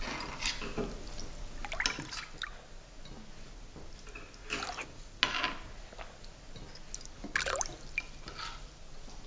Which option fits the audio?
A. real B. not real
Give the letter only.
A